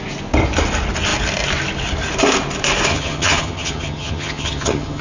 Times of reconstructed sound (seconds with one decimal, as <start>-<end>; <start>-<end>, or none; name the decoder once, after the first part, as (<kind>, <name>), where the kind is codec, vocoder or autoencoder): 2.9-5.0 (vocoder, HiFi-GAN)